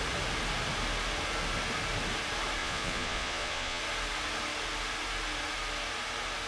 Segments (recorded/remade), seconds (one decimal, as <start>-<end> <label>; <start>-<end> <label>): 0.0-2.6 recorded; 2.6-3.8 remade; 3.8-6.5 recorded